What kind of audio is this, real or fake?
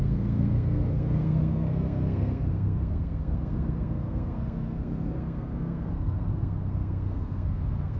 fake